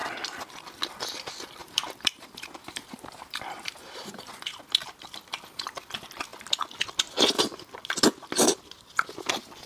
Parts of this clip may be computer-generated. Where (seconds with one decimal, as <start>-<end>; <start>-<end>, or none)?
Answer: 1.6-4.3